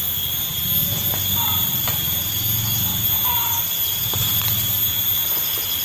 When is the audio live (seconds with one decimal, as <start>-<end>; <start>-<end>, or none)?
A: 0.0-5.8